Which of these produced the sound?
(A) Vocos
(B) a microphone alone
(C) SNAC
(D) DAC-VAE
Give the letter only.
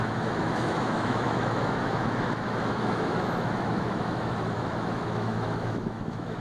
D